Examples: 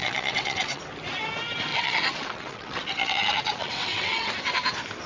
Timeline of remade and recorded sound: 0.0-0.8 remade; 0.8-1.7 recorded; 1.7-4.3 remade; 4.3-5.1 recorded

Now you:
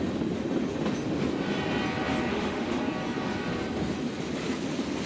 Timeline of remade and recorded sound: 0.0-2.3 recorded; 2.3-2.8 remade; 2.8-5.1 recorded